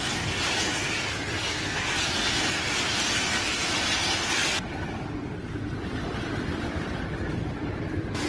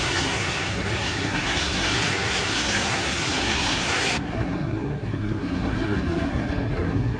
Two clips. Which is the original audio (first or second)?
first